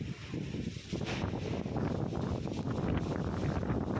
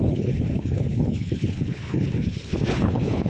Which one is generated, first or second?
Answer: second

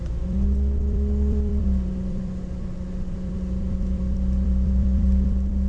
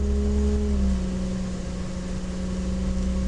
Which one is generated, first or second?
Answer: first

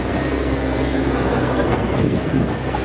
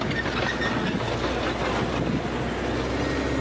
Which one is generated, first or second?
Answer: first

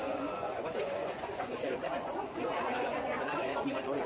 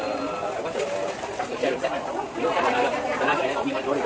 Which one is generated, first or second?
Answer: first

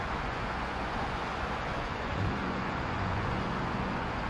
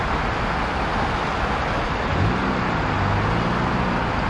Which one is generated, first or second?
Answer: first